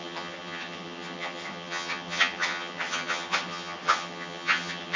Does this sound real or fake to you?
fake